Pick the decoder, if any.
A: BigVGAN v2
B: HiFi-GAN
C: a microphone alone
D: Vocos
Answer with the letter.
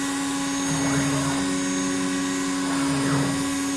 C